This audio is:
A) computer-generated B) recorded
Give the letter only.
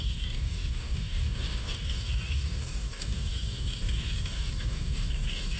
A